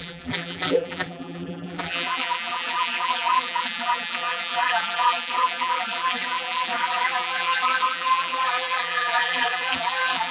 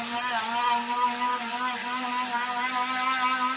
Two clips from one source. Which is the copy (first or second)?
first